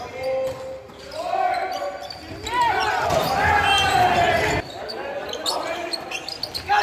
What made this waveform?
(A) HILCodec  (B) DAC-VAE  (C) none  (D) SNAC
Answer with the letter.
C